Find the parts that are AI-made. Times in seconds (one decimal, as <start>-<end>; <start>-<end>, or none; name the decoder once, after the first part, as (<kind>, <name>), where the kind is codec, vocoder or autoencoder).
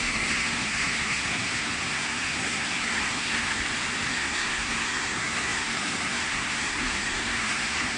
0.0-3.6 (codec, SNAC); 4.1-8.0